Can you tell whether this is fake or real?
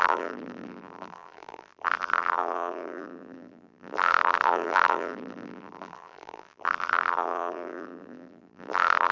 fake